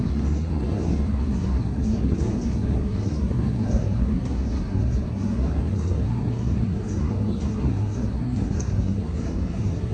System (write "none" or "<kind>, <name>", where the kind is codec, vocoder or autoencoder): codec, SNAC